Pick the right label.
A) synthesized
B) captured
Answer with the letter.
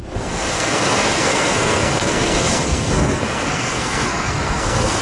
A